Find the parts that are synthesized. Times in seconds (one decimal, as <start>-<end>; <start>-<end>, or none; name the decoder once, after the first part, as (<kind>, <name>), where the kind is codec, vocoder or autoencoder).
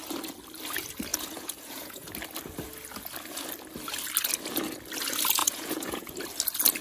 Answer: 1.1-2.1 (vocoder, Vocos); 5.4-6.1